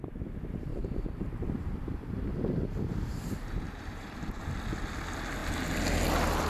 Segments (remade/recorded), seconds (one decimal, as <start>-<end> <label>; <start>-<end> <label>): 0.0-0.7 recorded; 0.7-4.5 remade; 4.5-6.5 recorded